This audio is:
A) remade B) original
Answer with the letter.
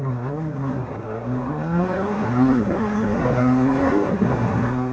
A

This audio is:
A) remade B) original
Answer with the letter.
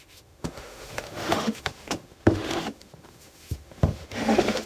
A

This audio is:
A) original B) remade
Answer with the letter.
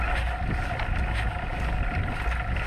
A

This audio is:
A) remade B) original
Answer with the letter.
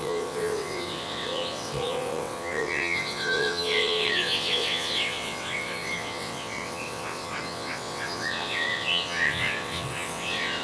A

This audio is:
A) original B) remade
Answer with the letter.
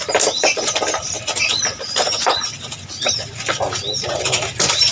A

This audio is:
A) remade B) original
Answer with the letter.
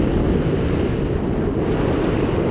B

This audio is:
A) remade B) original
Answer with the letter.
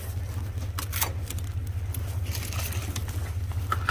B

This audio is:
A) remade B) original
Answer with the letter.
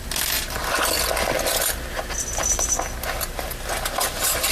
B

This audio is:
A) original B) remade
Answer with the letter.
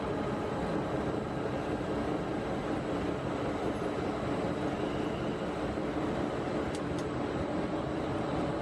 A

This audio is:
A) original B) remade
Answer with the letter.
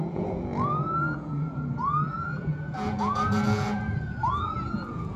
B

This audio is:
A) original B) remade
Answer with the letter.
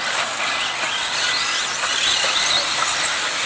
A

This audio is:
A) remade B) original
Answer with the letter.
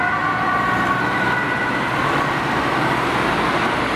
B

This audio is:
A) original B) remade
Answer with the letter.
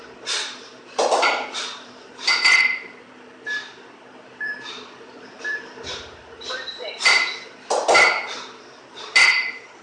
B